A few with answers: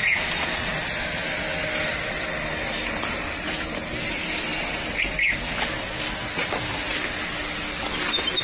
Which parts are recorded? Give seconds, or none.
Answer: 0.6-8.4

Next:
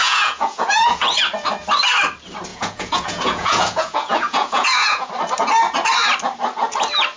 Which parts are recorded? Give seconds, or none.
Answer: 1.2-2.5; 5.1-7.2

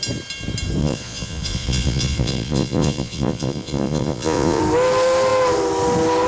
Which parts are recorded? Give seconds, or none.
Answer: 0.0-0.8; 4.6-6.3

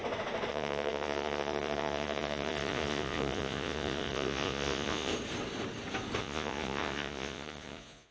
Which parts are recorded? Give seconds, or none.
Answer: 0.0-0.5; 5.1-6.2

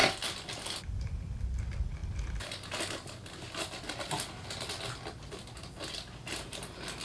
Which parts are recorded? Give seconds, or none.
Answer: 0.0-7.0

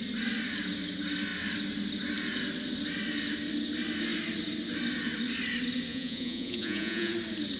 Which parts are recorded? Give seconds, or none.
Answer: 0.0-5.9; 7.1-7.6

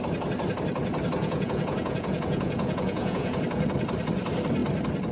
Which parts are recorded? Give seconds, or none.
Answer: 0.0-1.2; 3.4-5.1

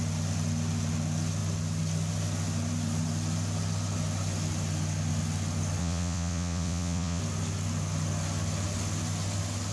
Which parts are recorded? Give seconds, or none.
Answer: 0.0-5.8; 7.2-9.7